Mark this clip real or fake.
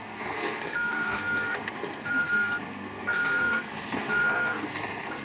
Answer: fake